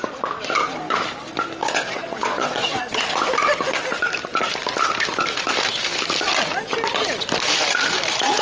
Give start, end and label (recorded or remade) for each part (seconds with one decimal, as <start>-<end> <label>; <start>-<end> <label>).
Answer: 0.0-1.6 recorded; 1.6-2.8 remade; 2.8-8.4 recorded